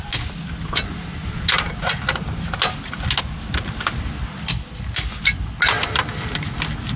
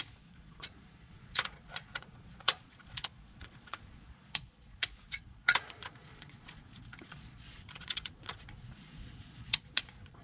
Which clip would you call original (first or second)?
first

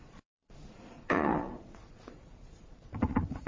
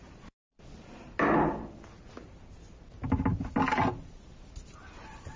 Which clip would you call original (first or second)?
second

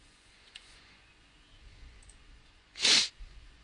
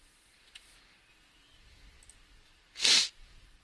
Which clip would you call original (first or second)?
second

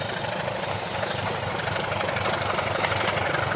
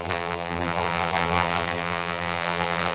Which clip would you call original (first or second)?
first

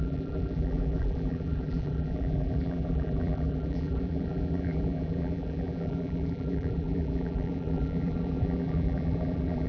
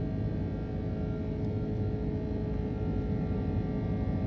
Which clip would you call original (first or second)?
second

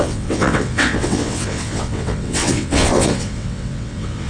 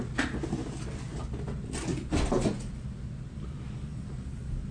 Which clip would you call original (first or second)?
second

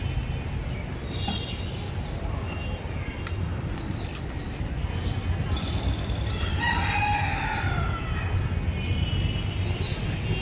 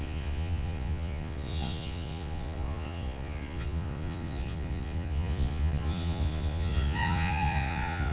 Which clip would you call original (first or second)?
first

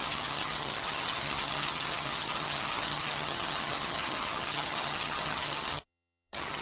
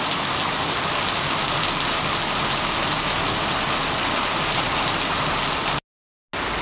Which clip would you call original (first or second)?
second